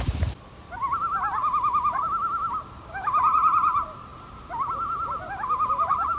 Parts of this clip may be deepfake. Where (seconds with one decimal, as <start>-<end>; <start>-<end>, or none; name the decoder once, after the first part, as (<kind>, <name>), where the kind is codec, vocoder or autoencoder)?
none